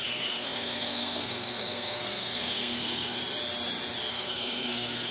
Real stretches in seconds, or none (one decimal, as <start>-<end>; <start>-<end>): 3.2-4.1

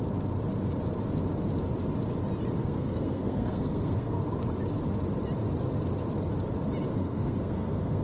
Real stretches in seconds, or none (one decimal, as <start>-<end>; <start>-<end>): 0.0-2.6; 4.2-6.9